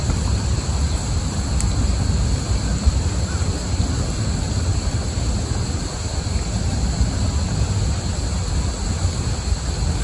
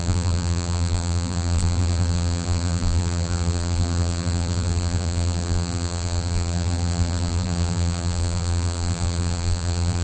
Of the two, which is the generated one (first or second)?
second